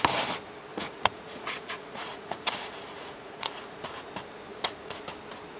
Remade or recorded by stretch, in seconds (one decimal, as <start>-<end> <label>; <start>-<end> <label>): 0.0-0.7 recorded; 0.7-4.1 remade; 4.1-4.5 recorded; 4.5-5.0 remade; 5.0-5.6 recorded

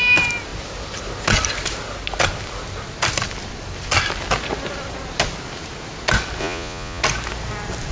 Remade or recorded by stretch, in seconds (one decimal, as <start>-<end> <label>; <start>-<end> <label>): 0.0-6.4 recorded; 6.4-7.0 remade; 7.0-7.9 recorded

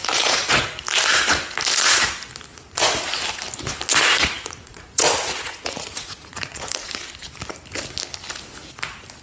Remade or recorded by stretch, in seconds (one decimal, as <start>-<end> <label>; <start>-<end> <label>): 0.0-0.8 remade; 0.8-2.5 recorded; 2.5-3.0 remade; 3.0-3.9 recorded; 3.9-7.0 remade; 7.0-9.2 recorded

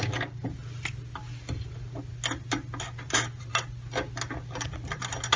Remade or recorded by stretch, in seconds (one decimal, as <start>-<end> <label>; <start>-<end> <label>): 0.0-5.4 recorded

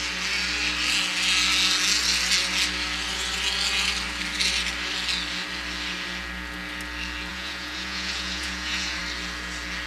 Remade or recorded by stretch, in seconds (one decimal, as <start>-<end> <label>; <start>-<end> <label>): 0.0-7.3 recorded; 7.3-9.0 remade; 9.0-9.9 recorded

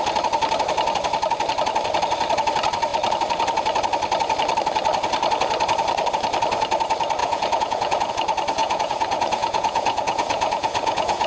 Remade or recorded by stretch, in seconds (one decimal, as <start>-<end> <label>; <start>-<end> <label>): 0.0-7.2 recorded; 7.2-8.1 remade; 8.1-8.6 recorded; 8.6-11.3 remade

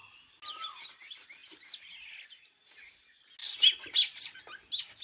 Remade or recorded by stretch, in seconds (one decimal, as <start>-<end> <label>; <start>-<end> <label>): 0.0-5.0 recorded

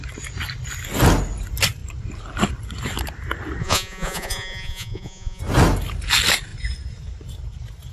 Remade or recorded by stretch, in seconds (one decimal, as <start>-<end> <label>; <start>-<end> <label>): 0.0-3.6 recorded; 3.6-5.4 remade; 5.4-7.9 recorded